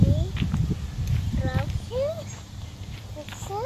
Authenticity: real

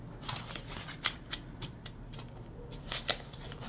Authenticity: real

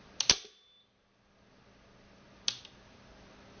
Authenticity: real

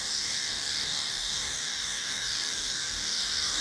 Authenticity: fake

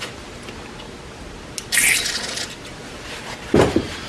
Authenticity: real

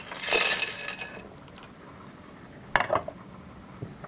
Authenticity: real